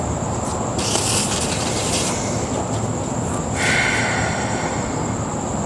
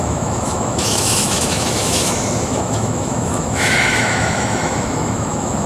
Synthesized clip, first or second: second